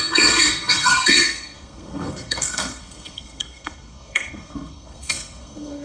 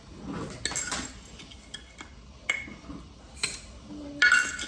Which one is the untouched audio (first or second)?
second